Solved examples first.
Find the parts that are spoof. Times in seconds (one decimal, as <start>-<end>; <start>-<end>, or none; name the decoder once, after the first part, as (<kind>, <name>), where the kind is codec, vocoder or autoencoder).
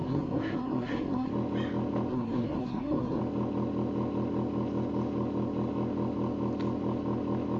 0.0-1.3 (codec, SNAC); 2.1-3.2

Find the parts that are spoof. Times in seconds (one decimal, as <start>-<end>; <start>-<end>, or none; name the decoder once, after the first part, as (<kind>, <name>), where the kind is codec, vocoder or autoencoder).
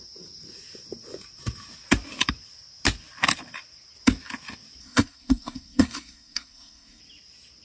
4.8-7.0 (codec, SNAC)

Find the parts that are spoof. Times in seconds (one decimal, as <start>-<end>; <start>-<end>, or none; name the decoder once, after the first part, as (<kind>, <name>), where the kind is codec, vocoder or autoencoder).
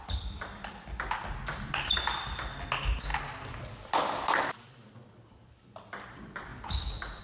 none